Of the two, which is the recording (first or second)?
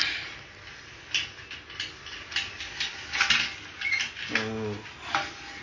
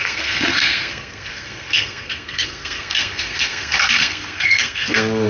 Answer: first